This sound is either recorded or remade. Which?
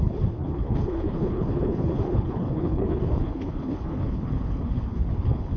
remade